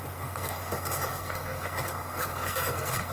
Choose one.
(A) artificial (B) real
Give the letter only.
A